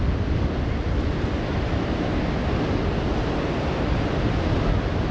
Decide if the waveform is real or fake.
real